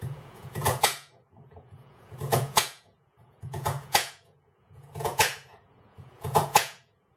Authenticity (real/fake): fake